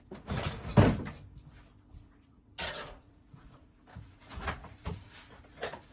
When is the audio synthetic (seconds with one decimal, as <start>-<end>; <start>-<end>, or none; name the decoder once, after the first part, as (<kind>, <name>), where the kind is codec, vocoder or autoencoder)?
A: 0.0-0.7 (vocoder, Vocos); 1.9-5.9